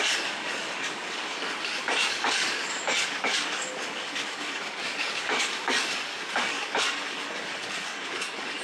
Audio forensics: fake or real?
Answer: fake